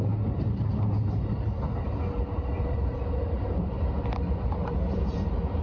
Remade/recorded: recorded